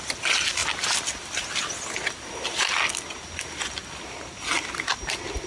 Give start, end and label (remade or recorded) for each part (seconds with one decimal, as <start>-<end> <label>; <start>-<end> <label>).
0.0-5.5 recorded